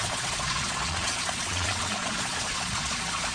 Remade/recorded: remade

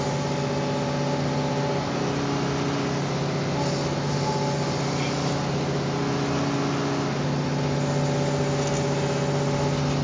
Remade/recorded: recorded